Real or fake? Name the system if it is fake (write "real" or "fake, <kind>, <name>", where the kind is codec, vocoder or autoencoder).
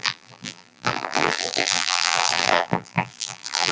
fake, vocoder, BigVGAN v2